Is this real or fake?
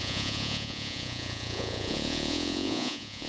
fake